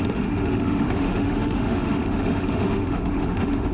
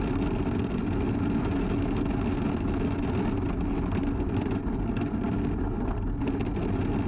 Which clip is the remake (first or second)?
first